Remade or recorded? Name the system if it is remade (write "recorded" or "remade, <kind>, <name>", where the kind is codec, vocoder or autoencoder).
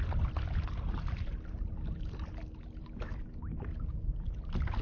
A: recorded